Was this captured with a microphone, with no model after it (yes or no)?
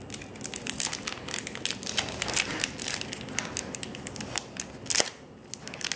yes